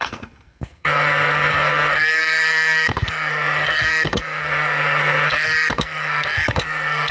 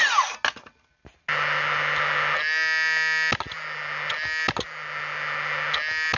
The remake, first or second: first